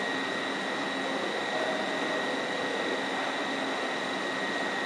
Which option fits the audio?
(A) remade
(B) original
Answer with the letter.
B